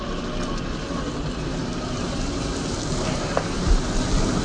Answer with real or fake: real